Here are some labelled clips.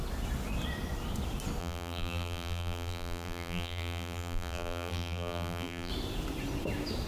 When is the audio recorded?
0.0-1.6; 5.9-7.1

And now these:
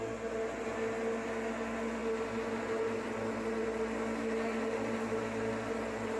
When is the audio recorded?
0.0-6.2

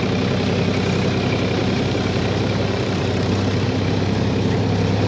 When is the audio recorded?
0.0-1.6

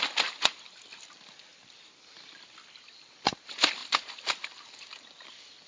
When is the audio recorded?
0.0-1.5; 3.3-5.7

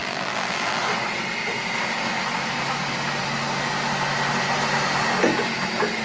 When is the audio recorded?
0.8-6.0

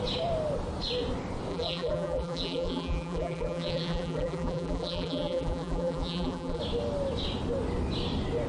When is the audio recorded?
0.0-1.5; 6.6-8.5

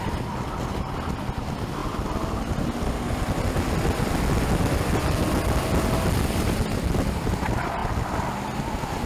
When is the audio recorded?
0.0-9.1

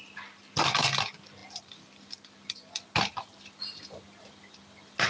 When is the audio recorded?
0.0-5.1